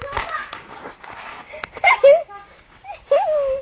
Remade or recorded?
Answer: remade